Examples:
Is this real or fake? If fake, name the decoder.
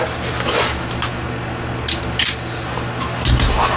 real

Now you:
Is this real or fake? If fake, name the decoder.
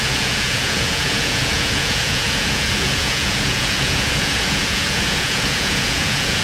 fake, vocoder, Vocos